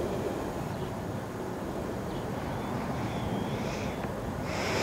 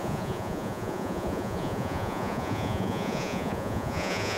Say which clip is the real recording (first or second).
first